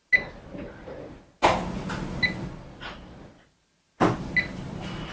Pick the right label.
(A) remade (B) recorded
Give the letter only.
B